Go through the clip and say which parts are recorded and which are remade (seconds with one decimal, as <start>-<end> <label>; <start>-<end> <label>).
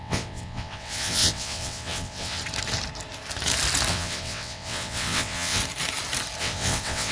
0.0-2.4 remade; 2.4-3.9 recorded; 3.9-5.6 remade; 5.6-6.4 recorded; 6.4-7.1 remade